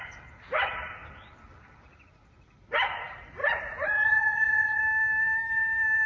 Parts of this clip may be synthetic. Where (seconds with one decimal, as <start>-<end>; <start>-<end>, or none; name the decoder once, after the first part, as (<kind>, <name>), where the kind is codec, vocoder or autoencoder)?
3.4-4.8 (vocoder, Vocos)